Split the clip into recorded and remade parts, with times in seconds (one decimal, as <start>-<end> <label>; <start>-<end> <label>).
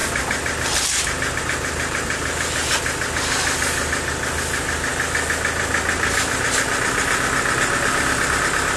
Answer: 0.0-8.8 recorded